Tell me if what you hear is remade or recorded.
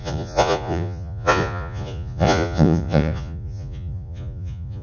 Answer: remade